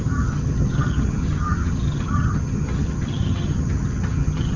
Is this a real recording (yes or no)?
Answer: no